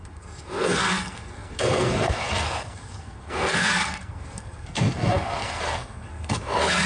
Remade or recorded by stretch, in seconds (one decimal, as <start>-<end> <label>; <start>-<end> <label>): 0.0-6.9 remade

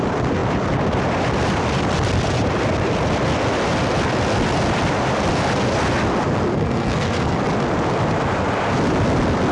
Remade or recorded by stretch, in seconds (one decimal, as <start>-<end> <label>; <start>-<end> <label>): 0.0-6.5 recorded; 6.5-7.4 remade; 7.4-9.5 recorded